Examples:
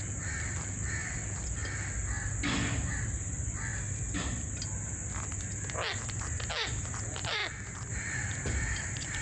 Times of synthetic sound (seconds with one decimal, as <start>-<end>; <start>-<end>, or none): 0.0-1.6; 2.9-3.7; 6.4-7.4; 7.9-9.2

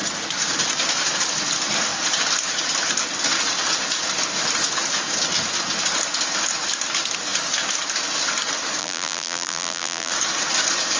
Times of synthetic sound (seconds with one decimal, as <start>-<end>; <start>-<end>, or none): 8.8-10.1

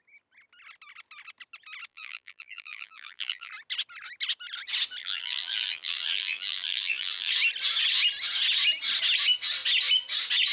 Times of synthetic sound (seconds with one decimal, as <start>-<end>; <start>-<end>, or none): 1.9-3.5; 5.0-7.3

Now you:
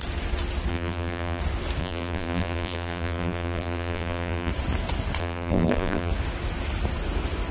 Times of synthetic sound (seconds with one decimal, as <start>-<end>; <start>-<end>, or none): 0.7-1.4; 1.8-4.5; 5.2-6.1

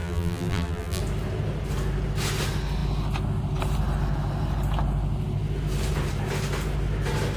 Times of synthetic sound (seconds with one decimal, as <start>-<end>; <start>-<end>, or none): 0.0-1.0

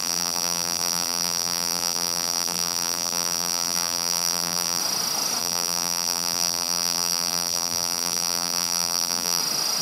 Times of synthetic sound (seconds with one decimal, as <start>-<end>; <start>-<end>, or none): 0.0-4.8; 5.4-9.4

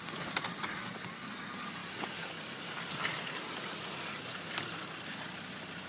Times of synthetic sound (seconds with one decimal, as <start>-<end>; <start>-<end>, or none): none

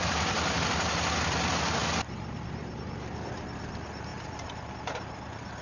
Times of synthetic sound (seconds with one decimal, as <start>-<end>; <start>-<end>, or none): 1.8-2.8; 4.1-4.7